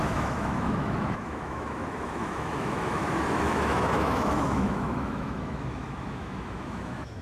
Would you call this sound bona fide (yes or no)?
no